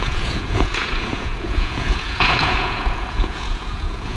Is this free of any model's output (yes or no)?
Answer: no